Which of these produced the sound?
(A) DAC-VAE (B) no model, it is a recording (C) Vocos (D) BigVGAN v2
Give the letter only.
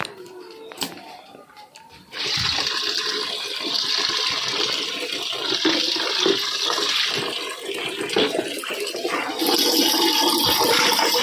B